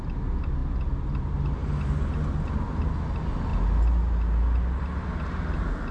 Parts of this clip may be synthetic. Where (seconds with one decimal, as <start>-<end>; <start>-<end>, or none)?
none